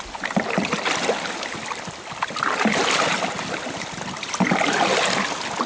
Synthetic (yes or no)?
no